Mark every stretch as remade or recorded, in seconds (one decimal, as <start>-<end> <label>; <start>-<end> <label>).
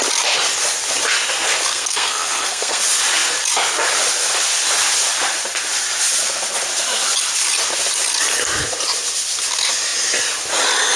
0.0-1.7 recorded; 1.7-2.8 remade; 2.8-11.0 recorded